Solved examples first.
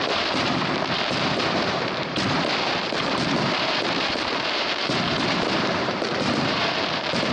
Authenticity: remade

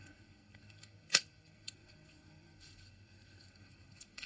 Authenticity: remade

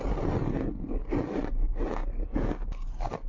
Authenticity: recorded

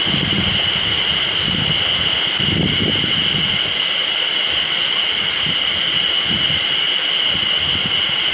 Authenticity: recorded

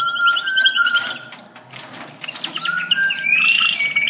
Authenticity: recorded